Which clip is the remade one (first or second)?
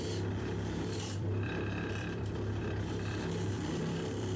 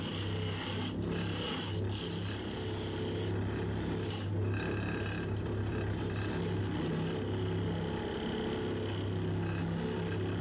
first